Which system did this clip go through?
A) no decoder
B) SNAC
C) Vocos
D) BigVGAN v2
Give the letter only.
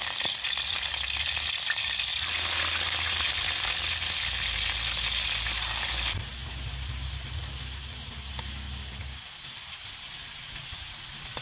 A